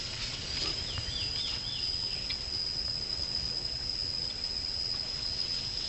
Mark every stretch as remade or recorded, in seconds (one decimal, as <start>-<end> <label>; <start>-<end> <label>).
0.0-0.4 remade; 0.4-1.4 recorded; 1.4-5.9 remade